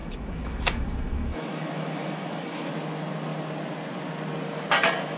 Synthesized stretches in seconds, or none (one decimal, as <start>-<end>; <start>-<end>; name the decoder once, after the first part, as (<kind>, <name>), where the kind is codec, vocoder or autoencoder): 0.0-2.7 (autoencoder, DAC-VAE)